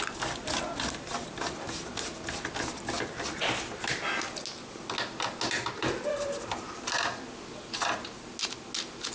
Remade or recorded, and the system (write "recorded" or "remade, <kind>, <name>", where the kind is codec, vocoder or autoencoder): recorded